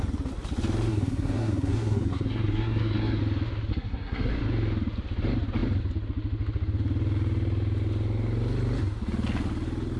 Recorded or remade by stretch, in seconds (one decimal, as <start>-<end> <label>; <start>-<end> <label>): 0.0-0.9 recorded; 0.9-3.2 remade; 3.2-3.7 recorded; 3.7-4.3 remade; 4.3-10.0 recorded